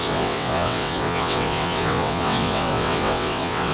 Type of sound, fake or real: fake